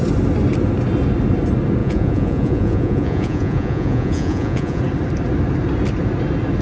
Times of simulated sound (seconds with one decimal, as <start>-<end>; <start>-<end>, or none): 1.8-4.8